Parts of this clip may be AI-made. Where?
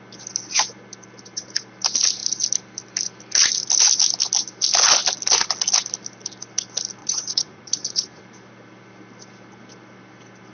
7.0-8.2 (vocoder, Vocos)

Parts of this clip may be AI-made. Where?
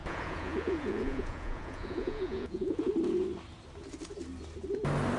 0.0-2.9 (vocoder, Vocos)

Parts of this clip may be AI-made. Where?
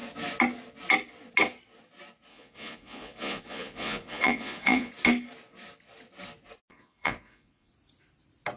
2.3-4.9 (vocoder, Vocos); 6.7-7.7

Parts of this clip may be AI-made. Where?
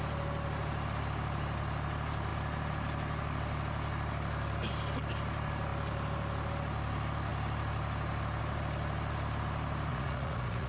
9.9-10.7 (vocoder, Vocos)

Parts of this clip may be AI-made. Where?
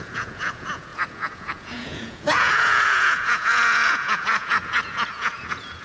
0.0-5.8 (vocoder, Vocos)